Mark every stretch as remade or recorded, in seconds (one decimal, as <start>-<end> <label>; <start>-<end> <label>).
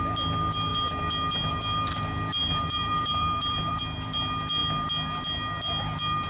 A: 0.0-2.4 recorded; 2.4-3.8 remade; 3.8-6.3 recorded